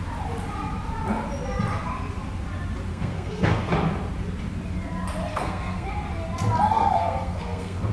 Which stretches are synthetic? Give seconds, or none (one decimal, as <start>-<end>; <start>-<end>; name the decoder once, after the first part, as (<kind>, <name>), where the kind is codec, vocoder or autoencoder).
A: 2.9-3.7 (codec, SNAC); 5.3-5.9; 6.7-7.9